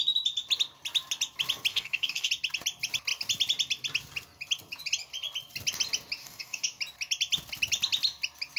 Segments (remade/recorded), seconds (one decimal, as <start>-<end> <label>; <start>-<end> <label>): 0.0-1.7 recorded; 1.7-2.3 remade; 2.3-6.2 recorded; 6.2-6.8 remade; 6.8-8.6 recorded